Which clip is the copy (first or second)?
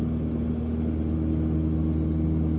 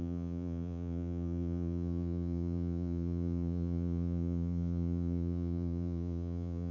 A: second